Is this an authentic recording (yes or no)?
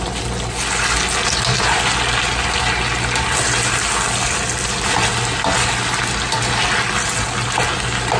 yes